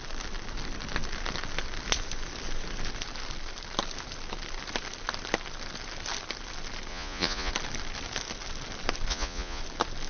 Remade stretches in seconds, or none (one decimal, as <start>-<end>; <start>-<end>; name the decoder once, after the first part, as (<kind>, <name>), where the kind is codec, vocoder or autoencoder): 6.9-7.5 (vocoder, Vocos); 9.1-9.6

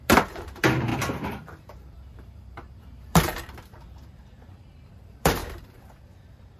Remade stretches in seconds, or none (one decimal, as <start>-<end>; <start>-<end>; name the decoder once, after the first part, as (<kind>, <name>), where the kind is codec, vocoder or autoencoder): 0.0-6.6 (vocoder, BigVGAN v2)

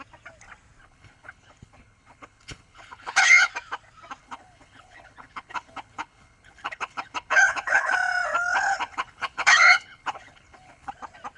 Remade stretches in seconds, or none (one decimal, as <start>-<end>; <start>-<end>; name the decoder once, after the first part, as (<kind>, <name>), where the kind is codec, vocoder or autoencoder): 0.8-3.5 (codec, HILCodec); 4.2-7.9; 8.5-10.9

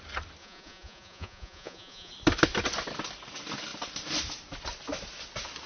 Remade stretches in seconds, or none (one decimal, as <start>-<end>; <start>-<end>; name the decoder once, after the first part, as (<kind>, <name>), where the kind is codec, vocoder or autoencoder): 0.4-2.1 (vocoder, Vocos)